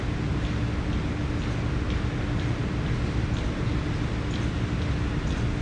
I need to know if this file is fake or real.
real